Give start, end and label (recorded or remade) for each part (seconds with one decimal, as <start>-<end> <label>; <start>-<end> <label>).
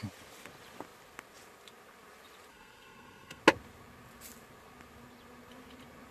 0.0-2.5 recorded; 2.5-3.4 remade; 3.4-6.1 recorded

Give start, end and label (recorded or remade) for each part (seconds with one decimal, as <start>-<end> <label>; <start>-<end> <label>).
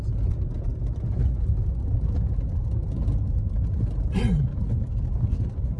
0.0-5.8 recorded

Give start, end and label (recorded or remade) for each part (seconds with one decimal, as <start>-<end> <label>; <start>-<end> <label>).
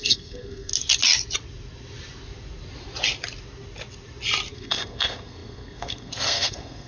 0.0-0.7 remade; 0.7-4.5 recorded; 4.5-6.9 remade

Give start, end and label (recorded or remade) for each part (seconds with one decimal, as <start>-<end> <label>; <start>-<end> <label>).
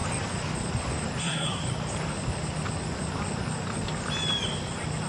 0.0-1.2 recorded; 1.2-1.6 remade; 1.6-5.1 recorded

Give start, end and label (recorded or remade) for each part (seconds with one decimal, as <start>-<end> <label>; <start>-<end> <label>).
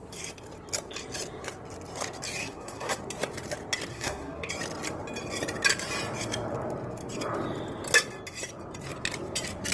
0.0-2.4 recorded; 2.4-3.0 remade; 3.0-3.9 recorded; 3.9-4.5 remade; 4.5-9.7 recorded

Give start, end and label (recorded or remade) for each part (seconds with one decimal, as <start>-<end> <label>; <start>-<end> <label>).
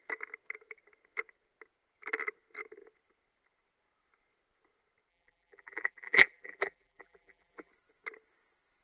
0.0-5.1 recorded; 5.1-7.7 remade; 7.7-8.8 recorded